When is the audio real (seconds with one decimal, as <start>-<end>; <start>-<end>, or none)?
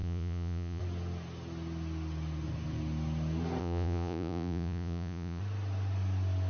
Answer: 0.8-3.6; 5.4-6.5